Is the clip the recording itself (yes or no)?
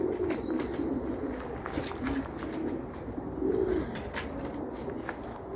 yes